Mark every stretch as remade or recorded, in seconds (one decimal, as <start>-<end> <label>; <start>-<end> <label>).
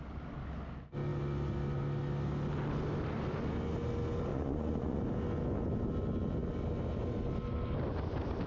0.0-4.3 recorded; 4.3-5.0 remade; 5.0-8.5 recorded